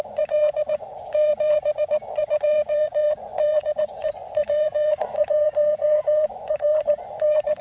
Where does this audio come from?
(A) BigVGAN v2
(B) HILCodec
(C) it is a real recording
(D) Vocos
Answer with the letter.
D